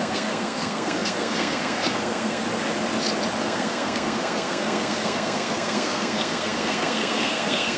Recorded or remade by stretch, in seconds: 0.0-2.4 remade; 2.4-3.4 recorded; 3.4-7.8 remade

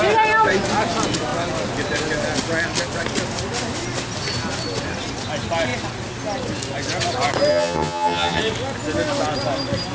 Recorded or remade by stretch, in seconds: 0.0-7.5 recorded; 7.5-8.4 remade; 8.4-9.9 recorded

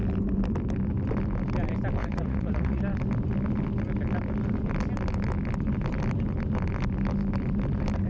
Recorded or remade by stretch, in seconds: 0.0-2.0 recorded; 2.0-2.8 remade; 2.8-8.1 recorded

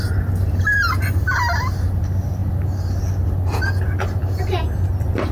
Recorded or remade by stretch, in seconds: 0.0-5.3 recorded